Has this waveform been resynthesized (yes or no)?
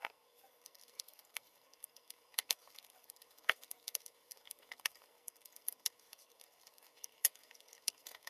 yes